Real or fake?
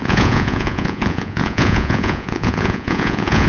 fake